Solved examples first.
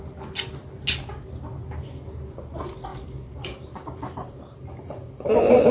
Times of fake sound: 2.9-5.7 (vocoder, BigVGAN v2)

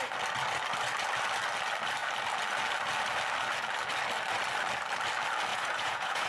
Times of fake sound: 5.5-6.3 (vocoder, Vocos)

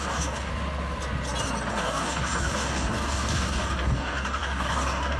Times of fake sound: 0.0-0.5 (codec, DAC); 1.7-5.2

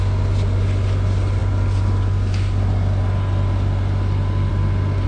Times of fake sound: none

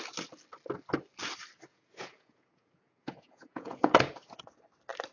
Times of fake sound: 1.7-4.4 (vocoder, Vocos)

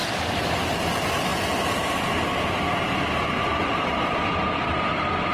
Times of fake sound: 0.0-0.5 (vocoder, BigVGAN v2); 4.4-5.3

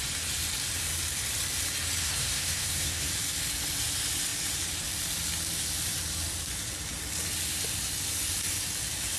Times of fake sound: 2.0-3.1 (codec, SNAC)